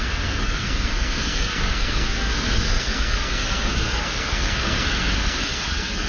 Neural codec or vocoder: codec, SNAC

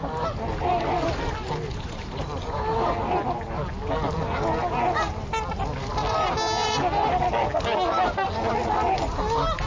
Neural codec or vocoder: none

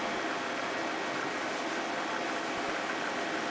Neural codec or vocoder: none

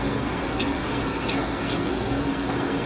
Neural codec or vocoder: codec, SNAC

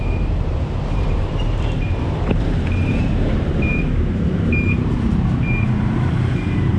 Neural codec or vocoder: vocoder, BigVGAN v2